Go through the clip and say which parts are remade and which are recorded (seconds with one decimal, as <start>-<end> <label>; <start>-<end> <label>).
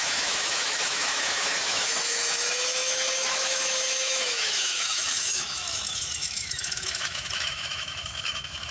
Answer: 0.0-8.7 remade